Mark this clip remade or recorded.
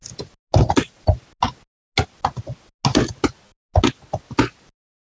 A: recorded